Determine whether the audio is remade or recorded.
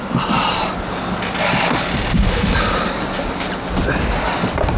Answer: recorded